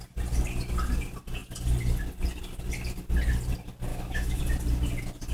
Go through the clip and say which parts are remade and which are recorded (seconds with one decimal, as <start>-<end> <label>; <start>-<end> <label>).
0.0-3.9 recorded; 3.9-4.4 remade; 4.4-5.3 recorded